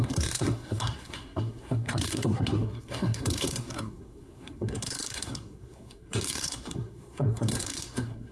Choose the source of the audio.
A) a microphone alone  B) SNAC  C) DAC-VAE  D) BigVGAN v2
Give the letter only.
B